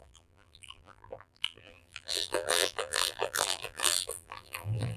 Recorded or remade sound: remade